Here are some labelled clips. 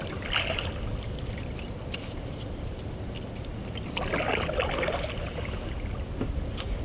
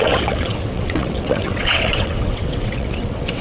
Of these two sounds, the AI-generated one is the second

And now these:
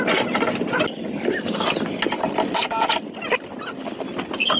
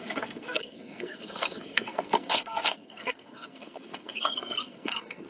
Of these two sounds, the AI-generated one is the second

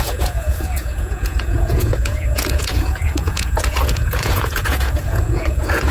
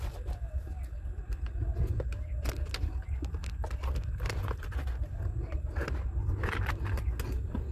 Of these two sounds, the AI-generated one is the first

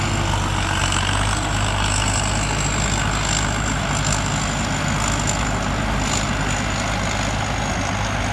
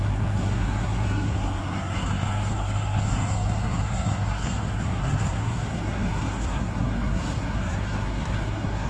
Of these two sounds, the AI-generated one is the second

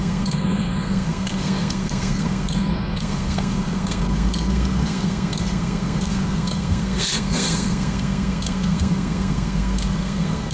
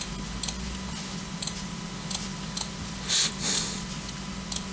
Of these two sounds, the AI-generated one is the first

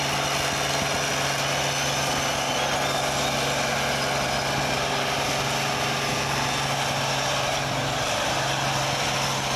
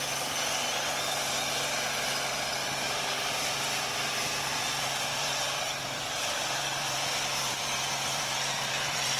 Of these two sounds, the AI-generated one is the second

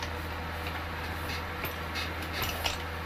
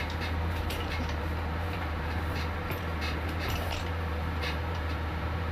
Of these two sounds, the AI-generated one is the second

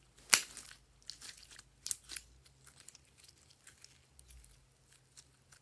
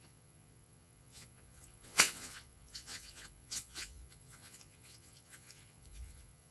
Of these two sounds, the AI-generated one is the second